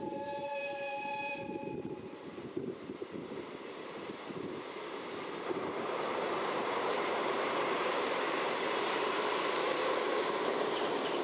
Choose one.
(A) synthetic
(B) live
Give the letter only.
A